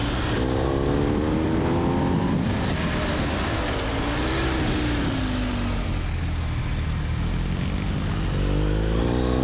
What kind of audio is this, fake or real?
real